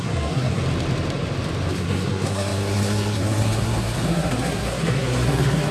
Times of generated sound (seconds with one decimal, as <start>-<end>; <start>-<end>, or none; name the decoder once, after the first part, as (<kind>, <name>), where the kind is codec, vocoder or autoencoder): 0.0-0.6 (codec, SNAC); 1.7-5.7